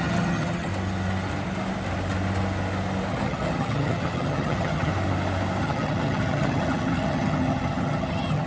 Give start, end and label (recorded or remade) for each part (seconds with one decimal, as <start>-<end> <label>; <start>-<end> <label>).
0.0-0.7 remade; 0.7-3.1 recorded; 3.1-4.9 remade; 4.9-5.6 recorded; 5.6-8.5 remade